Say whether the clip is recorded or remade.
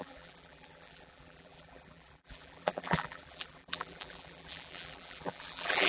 remade